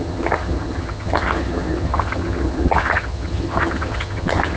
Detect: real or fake fake